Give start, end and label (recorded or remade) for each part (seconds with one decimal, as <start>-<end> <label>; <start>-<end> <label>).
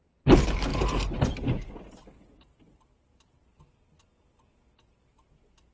0.0-5.7 recorded